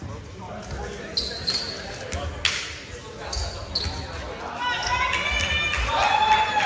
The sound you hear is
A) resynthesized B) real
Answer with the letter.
B